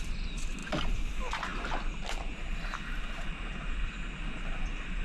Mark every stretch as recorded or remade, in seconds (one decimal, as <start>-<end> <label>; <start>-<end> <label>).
0.0-5.0 recorded